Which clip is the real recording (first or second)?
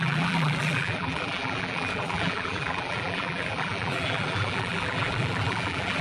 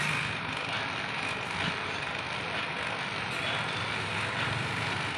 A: second